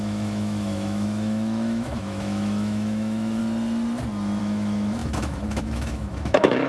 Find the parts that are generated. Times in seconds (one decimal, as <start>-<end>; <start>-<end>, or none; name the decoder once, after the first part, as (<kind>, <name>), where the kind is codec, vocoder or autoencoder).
0.0-3.4 (autoencoder, DAC-VAE); 4.4-6.7